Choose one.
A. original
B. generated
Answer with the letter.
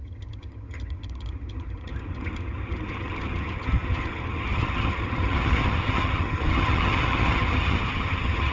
B